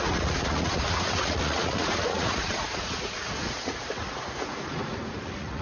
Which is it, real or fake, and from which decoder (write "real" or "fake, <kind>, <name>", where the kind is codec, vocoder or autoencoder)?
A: fake, vocoder, Vocos